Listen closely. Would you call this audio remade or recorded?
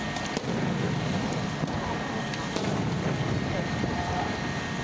recorded